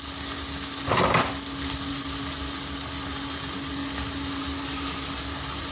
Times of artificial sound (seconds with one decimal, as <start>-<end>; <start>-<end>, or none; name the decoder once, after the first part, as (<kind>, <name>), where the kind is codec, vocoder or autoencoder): none